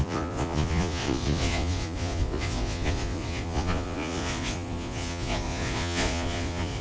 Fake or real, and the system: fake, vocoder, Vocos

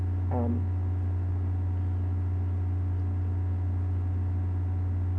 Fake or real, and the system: real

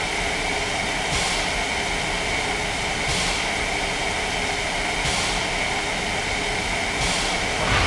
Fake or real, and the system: real